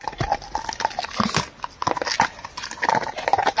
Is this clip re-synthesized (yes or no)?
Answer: no